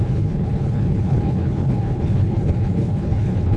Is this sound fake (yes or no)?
yes